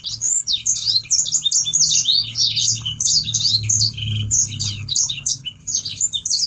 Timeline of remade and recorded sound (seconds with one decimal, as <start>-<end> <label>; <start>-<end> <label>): 0.0-1.1 remade; 1.1-2.2 recorded; 2.2-5.6 remade; 5.6-6.5 recorded